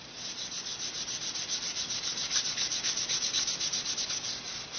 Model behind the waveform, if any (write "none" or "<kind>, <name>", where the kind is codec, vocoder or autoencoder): none